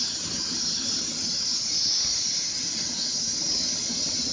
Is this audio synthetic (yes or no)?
no